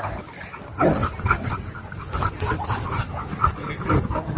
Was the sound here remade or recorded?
recorded